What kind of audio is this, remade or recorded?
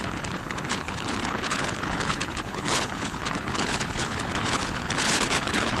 remade